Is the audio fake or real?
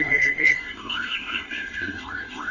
fake